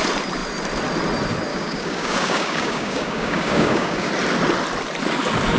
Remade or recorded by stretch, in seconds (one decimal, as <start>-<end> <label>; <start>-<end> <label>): 0.0-1.5 recorded; 1.5-4.1 remade; 4.1-5.6 recorded